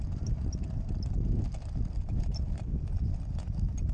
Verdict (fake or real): real